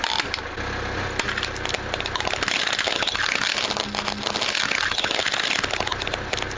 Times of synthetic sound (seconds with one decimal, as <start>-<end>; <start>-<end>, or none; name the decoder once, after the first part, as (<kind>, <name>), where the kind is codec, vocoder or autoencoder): none

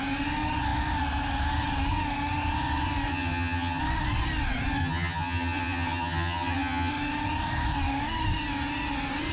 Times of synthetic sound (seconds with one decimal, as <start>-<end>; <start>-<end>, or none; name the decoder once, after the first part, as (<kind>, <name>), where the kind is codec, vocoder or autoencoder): 3.1-3.8 (vocoder, HiFi-GAN); 4.8-6.9

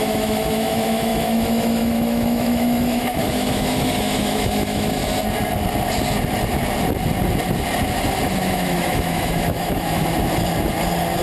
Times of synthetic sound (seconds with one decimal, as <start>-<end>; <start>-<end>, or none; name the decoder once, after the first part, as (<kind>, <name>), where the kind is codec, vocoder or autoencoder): 0.0-5.0 (autoencoder, DAC-VAE); 8.5-10.0